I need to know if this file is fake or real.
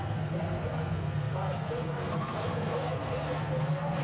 fake